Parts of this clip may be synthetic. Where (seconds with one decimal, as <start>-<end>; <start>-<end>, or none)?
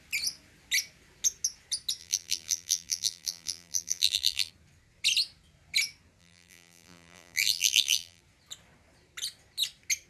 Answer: 2.0-4.5; 6.2-8.2